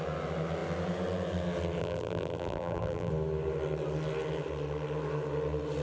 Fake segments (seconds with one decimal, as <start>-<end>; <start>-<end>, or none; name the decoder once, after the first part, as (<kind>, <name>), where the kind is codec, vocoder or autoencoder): 1.8-3.1 (vocoder, BigVGAN v2)